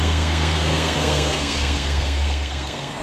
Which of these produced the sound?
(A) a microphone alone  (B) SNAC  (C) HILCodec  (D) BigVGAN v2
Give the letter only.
B